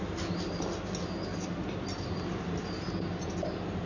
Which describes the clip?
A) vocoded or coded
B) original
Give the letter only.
B